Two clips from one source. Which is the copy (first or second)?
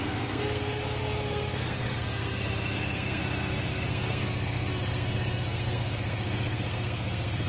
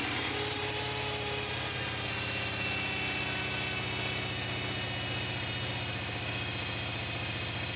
first